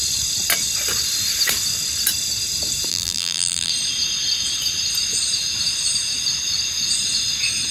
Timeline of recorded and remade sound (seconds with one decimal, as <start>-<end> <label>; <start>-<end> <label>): 0.0-2.9 recorded; 2.9-3.7 remade; 3.7-7.7 recorded